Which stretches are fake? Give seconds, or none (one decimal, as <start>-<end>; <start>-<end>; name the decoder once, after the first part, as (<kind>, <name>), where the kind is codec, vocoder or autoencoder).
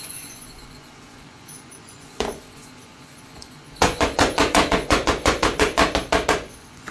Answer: 0.0-5.8 (vocoder, Vocos); 6.3-6.9